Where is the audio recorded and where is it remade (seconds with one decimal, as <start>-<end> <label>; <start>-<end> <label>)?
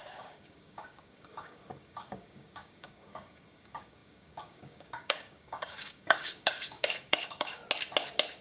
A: 0.0-7.6 remade; 7.6-8.4 recorded